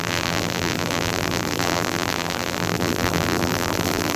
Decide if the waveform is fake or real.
fake